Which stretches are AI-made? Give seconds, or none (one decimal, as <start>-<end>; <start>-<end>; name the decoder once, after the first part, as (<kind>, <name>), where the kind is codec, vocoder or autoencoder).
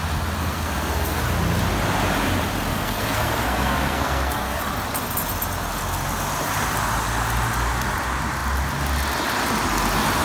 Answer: 0.4-1.2 (codec, SNAC); 2.7-4.6